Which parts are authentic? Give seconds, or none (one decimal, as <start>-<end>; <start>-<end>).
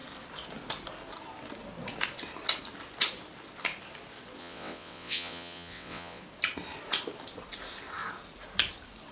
0.0-4.4; 6.2-9.1